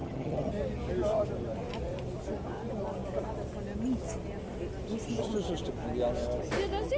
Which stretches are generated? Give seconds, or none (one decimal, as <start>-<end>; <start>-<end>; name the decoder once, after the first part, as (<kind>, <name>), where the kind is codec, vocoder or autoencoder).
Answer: 0.0-0.5 (vocoder, HiFi-GAN)